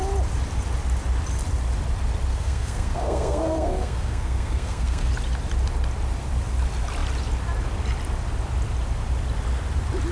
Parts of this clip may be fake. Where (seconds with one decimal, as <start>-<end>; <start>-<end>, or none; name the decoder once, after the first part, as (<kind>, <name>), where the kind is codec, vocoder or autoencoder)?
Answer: 2.3-5.1 (codec, SNAC)